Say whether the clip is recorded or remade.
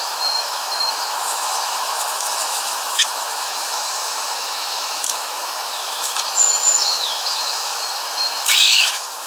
remade